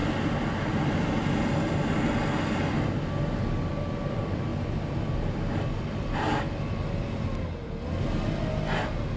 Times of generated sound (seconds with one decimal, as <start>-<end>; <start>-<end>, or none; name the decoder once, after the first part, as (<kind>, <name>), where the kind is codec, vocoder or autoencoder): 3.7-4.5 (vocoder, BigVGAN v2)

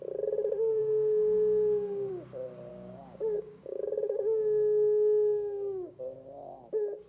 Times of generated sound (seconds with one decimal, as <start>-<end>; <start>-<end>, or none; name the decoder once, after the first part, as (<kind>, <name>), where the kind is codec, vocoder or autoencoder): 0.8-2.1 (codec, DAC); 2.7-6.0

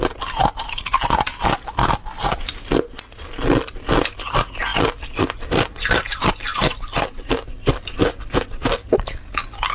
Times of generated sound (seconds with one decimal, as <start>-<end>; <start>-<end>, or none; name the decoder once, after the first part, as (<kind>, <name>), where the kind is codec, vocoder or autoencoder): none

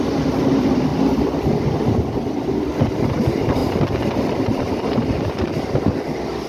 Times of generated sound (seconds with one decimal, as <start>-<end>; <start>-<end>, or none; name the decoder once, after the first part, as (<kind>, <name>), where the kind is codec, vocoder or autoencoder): none

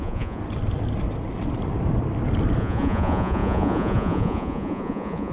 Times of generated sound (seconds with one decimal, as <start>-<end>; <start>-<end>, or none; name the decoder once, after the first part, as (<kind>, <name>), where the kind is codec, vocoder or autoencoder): 0.0-0.4 (vocoder, Vocos); 2.6-5.3

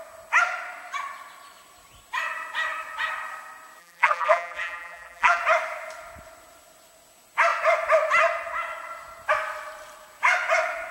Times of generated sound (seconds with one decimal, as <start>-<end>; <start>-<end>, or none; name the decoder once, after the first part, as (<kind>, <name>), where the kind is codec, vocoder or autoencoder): 3.8-5.4 (vocoder, BigVGAN v2)

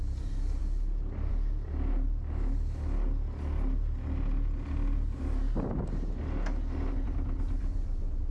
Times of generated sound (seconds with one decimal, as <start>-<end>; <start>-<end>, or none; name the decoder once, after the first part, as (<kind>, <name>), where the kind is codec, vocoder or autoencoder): none